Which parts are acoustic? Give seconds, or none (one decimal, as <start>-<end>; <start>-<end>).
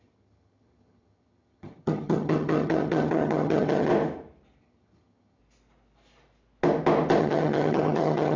3.9-4.6; 5.4-7.2